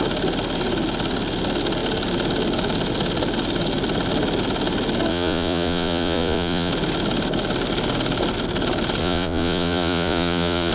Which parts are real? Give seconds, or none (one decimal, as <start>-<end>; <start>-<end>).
0.0-5.1; 6.7-9.0